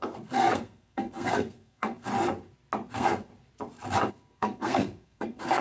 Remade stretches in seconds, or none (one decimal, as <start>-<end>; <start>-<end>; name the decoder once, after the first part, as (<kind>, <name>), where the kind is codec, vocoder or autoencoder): 0.0-2.1 (codec, SNAC); 2.9-3.3; 4.1-5.6